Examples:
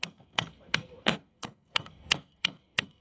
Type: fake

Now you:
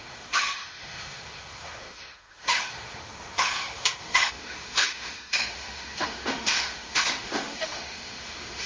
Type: fake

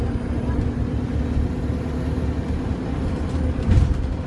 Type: real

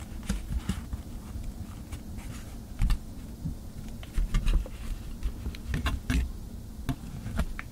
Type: real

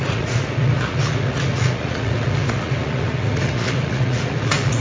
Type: fake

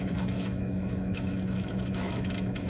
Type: fake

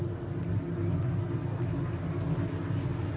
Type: real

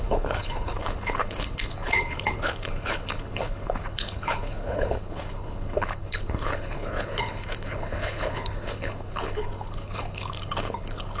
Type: fake